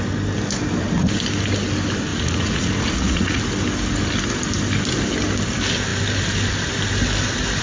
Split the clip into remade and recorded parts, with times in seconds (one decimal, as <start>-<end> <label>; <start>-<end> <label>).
0.0-2.1 recorded; 2.1-3.4 remade; 3.4-7.6 recorded